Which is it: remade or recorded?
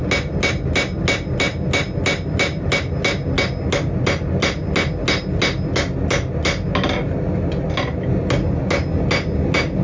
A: recorded